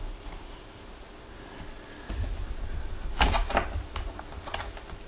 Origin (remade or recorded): recorded